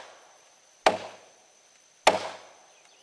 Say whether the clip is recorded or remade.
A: recorded